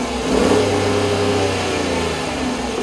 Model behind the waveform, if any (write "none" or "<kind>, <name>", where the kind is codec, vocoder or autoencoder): none